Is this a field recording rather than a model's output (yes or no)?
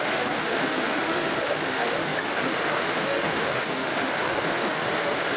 no